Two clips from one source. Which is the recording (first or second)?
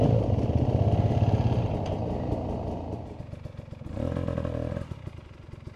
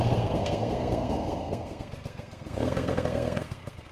first